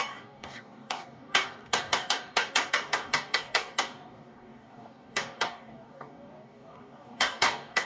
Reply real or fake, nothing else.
fake